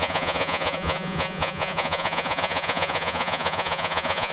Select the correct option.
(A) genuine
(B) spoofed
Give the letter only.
B